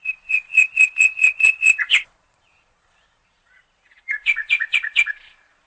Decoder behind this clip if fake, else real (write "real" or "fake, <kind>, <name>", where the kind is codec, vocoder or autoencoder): fake, vocoder, Vocos